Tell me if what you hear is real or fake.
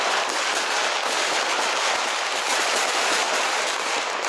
real